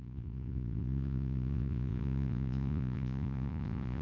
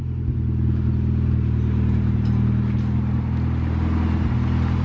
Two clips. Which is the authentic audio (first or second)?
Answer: second